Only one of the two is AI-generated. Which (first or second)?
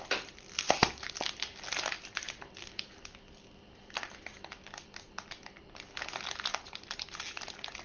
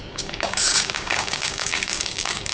second